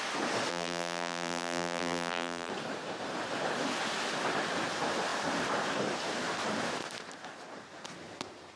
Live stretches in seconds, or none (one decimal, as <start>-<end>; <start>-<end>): 0.0-0.5; 2.5-8.6